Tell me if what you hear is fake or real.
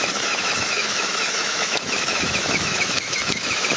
fake